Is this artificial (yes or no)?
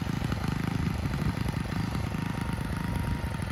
no